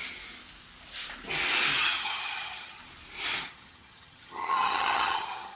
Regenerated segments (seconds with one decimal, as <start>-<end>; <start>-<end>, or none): 1.8-2.8; 3.4-5.6